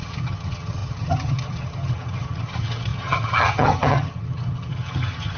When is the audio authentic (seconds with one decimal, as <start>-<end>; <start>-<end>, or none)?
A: none